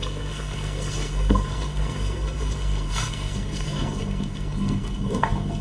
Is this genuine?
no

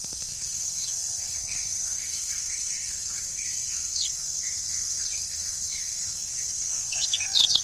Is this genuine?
no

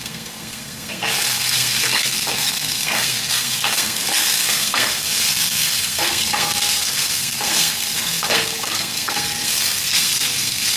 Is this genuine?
no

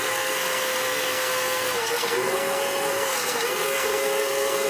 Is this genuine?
no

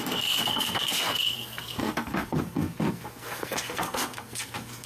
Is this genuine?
no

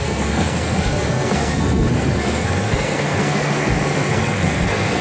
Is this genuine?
no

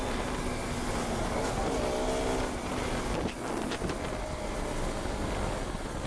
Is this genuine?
yes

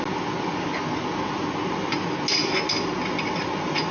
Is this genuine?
yes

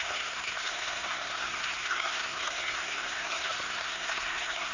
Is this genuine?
no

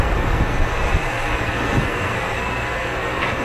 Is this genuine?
no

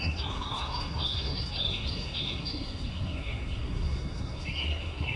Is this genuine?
no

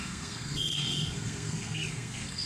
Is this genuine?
no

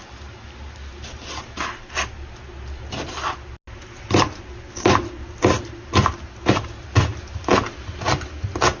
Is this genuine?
yes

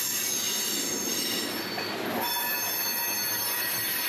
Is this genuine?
yes